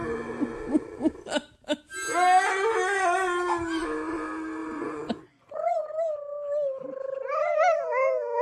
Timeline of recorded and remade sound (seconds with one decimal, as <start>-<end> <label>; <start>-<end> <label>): 0.0-4.6 recorded; 4.6-5.9 remade; 5.9-8.4 recorded